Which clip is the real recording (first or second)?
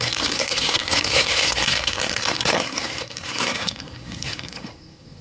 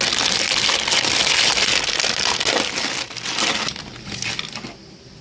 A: second